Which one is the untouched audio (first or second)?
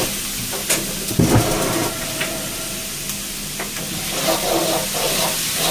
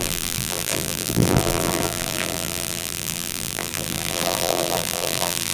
first